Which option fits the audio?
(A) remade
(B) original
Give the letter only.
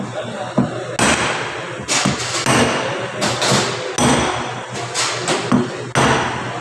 B